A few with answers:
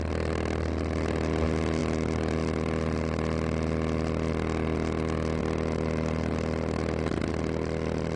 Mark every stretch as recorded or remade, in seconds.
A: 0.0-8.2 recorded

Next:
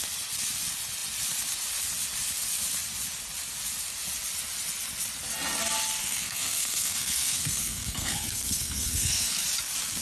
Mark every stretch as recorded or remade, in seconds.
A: 0.0-6.0 recorded; 6.0-9.4 remade; 9.4-10.0 recorded

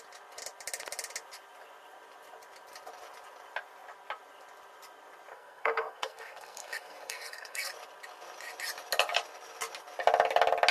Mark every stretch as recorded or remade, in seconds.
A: 0.0-5.3 recorded; 5.3-7.7 remade; 7.7-10.7 recorded

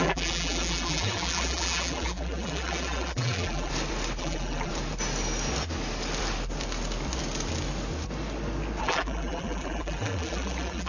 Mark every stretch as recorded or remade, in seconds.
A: 0.0-3.7 remade; 3.7-4.2 recorded; 4.2-4.7 remade; 4.7-8.8 recorded; 8.8-10.9 remade